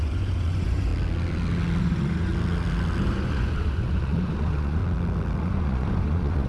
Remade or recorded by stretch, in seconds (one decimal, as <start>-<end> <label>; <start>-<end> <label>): 0.0-0.9 remade; 0.9-1.8 recorded; 1.8-2.3 remade; 2.3-3.0 recorded; 3.0-4.8 remade; 4.8-5.4 recorded; 5.4-6.5 remade